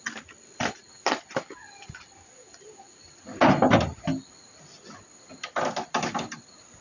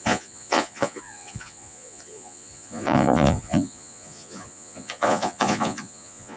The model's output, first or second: second